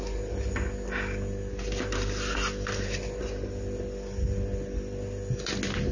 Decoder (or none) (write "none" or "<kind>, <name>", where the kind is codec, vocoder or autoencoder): none